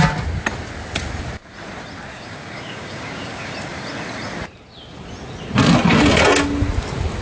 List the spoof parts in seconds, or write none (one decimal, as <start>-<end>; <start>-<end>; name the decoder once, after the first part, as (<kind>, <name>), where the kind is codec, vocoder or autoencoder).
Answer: 2.1-3.5 (codec, DAC)